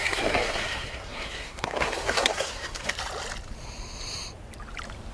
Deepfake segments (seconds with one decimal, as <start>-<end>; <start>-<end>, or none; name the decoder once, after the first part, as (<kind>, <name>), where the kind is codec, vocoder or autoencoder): 0.0-2.9 (codec, SNAC)